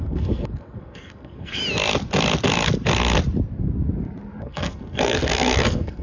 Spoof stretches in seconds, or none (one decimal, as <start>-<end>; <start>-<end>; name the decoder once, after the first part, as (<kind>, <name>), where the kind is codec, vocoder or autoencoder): 0.0-1.6 (codec, SNAC); 4.4-6.0

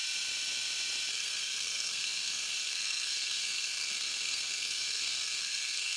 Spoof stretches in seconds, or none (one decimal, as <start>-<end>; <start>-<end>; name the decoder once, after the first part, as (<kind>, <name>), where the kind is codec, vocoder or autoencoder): 1.1-6.0 (codec, SNAC)

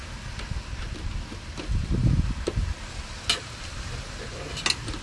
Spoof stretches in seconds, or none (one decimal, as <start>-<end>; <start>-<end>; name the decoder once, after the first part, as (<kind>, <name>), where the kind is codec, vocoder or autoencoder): none